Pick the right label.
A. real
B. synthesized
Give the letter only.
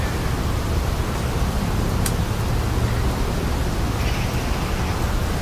A